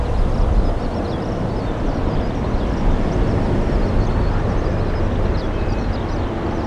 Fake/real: real